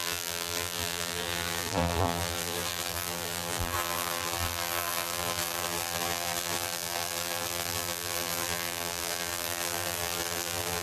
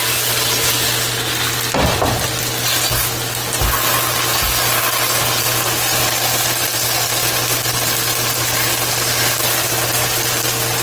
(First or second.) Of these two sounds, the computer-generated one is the first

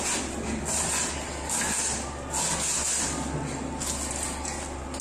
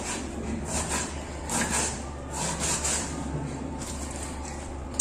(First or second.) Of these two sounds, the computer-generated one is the second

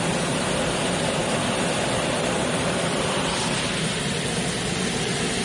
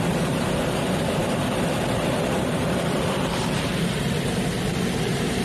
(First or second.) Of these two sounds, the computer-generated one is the second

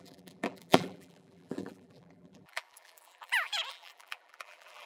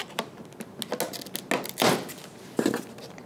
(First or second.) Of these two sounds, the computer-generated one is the first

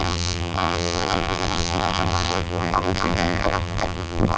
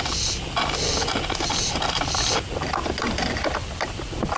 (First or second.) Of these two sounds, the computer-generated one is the first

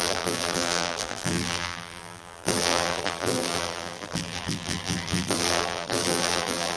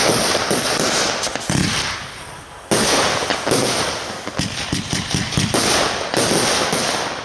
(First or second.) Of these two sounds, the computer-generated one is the first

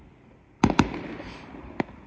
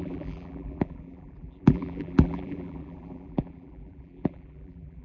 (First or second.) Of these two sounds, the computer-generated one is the second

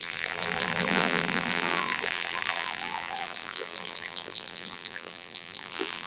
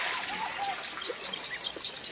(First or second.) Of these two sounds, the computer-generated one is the first